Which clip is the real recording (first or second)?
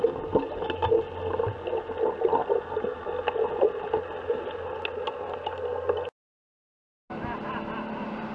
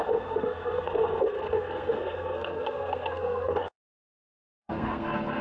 first